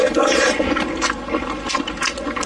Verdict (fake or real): real